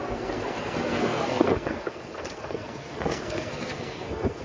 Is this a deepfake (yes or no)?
yes